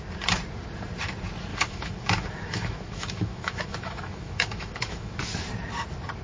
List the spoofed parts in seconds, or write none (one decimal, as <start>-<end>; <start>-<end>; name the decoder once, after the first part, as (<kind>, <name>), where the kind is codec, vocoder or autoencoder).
1.5-5.2 (autoencoder, DAC-VAE)